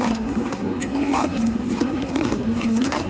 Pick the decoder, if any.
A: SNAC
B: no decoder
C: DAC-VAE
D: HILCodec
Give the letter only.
A